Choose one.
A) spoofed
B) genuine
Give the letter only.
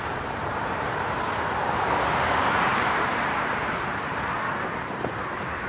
A